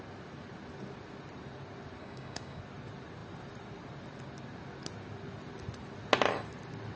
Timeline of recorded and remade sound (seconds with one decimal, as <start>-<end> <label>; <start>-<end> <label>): 0.0-2.0 recorded; 2.0-2.6 remade; 2.6-7.0 recorded